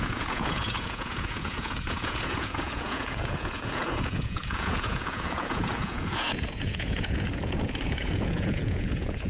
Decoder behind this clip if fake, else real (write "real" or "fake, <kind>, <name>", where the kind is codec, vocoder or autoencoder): fake, vocoder, Vocos